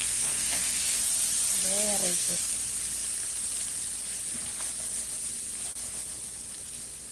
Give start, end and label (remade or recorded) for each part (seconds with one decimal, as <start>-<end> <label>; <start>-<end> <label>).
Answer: 0.0-1.0 remade; 1.0-2.0 recorded; 2.0-2.5 remade; 2.5-7.1 recorded